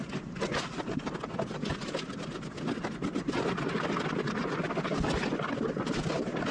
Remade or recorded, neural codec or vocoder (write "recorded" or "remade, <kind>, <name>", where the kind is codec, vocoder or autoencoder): recorded